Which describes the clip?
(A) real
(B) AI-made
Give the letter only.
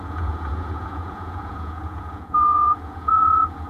B